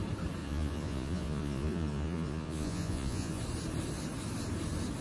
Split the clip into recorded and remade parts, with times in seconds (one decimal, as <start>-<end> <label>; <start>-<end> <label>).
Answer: 0.0-0.4 recorded; 0.4-3.4 remade; 3.4-5.0 recorded